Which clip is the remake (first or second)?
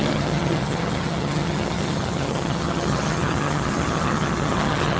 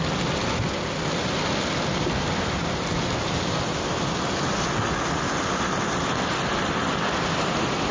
first